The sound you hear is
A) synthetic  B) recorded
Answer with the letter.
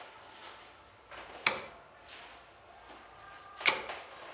B